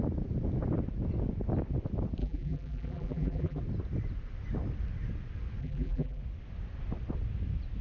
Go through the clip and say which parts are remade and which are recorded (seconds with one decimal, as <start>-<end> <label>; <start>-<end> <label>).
0.0-2.2 recorded; 2.2-3.6 remade; 3.6-5.6 recorded; 5.6-6.2 remade; 6.2-7.8 recorded